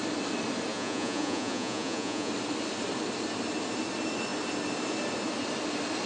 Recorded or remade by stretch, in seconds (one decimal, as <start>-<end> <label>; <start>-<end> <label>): 0.0-0.7 recorded; 0.7-2.3 remade; 2.3-6.1 recorded